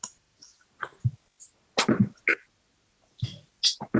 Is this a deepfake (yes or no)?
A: no